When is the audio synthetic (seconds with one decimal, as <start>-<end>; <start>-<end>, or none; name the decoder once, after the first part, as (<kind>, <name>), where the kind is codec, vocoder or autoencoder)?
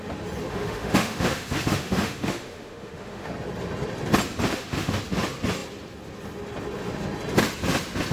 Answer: 0.5-3.3 (autoencoder, DAC-VAE); 4.5-5.0